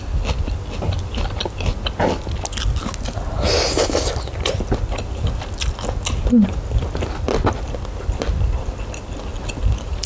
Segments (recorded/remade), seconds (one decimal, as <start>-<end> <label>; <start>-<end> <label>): 0.0-10.1 recorded